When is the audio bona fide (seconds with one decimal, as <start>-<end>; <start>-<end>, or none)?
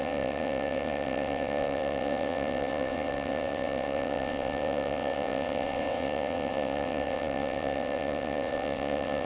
none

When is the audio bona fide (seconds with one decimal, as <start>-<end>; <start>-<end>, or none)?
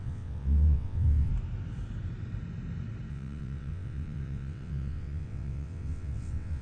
1.3-3.1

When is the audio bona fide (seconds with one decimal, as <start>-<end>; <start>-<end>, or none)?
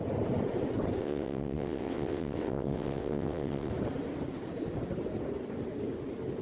0.0-1.0; 3.7-6.4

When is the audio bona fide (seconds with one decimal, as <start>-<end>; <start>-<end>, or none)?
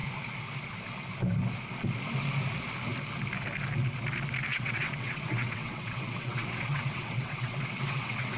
0.0-4.5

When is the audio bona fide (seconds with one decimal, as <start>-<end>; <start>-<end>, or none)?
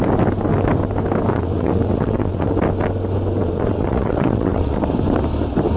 0.0-1.3; 2.5-3.4; 4.8-5.8